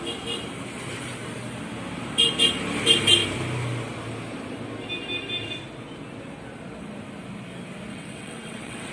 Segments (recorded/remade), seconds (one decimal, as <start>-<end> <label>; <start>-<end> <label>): 0.0-7.9 recorded; 7.9-8.9 remade